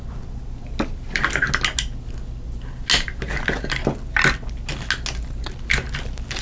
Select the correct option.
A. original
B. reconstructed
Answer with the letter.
A